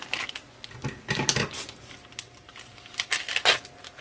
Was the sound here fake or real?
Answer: real